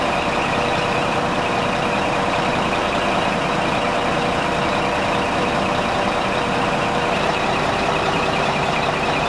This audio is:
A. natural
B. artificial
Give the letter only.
B